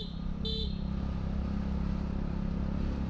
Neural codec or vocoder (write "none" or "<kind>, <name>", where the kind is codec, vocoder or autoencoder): none